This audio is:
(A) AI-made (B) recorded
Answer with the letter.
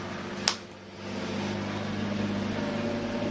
B